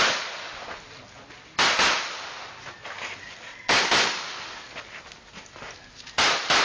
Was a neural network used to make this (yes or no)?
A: no